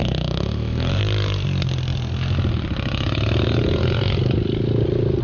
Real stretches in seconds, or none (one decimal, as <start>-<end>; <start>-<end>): 1.0-5.2